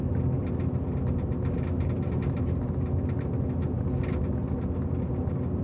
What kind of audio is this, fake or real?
real